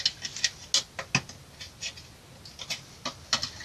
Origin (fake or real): real